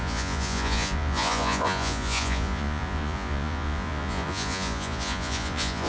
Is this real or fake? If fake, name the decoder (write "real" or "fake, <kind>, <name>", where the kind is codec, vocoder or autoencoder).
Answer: fake, vocoder, Vocos